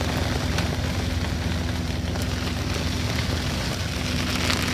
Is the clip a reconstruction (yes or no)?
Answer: no